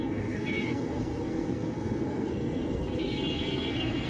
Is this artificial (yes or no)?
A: yes